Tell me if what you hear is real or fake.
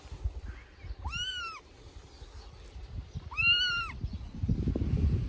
real